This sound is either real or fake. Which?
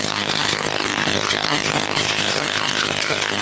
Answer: fake